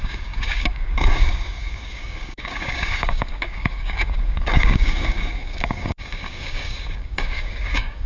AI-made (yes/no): yes